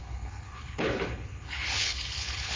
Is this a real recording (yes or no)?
no